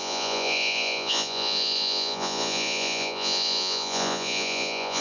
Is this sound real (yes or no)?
no